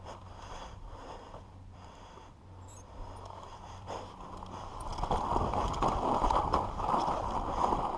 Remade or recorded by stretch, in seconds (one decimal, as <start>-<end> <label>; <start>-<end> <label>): 0.0-4.9 remade; 4.9-6.4 recorded; 6.4-8.0 remade